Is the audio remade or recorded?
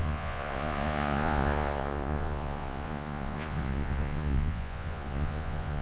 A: remade